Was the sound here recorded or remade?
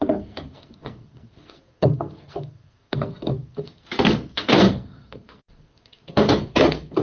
remade